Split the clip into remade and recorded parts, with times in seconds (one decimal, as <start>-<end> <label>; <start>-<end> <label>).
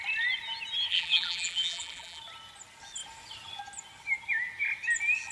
0.0-0.9 recorded; 0.9-2.2 remade; 2.2-5.3 recorded